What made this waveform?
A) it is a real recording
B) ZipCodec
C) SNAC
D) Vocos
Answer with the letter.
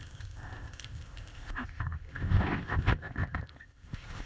B